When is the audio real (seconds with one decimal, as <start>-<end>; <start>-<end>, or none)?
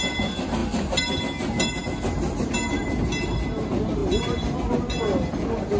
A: 0.0-5.8